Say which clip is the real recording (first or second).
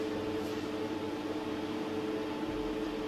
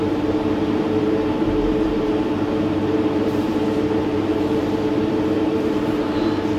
first